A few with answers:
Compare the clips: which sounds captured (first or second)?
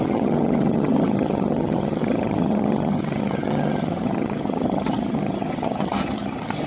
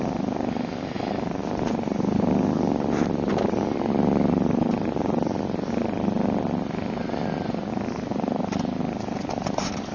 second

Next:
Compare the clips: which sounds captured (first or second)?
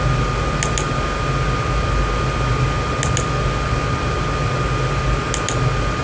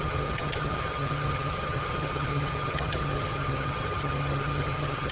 first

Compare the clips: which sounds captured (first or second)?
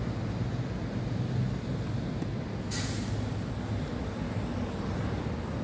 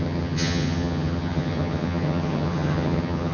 first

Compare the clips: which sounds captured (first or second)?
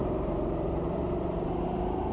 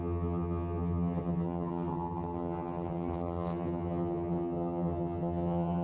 first